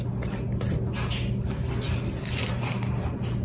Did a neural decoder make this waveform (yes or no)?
no